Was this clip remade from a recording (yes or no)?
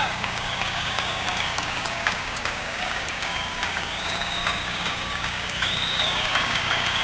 yes